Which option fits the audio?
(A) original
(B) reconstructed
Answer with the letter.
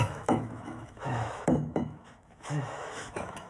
B